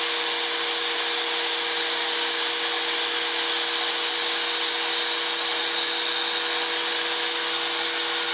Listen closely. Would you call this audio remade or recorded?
recorded